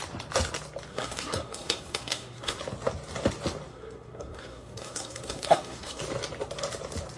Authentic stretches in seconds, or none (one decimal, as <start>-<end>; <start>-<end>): 0.0-0.9; 2.6-3.7; 6.0-7.2